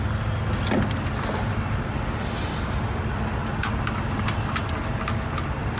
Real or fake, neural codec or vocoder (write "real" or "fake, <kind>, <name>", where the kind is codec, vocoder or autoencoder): real